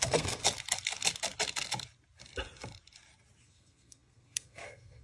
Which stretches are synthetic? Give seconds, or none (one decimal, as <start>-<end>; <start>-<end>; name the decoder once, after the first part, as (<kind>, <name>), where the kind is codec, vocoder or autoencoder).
0.0-0.4 (codec, SNAC); 3.4-5.0